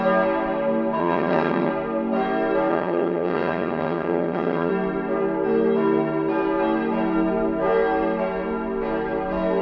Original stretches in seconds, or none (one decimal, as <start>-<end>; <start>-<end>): 0.0-1.0; 1.7-2.7; 4.7-9.6